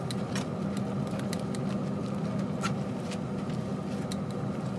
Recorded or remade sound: recorded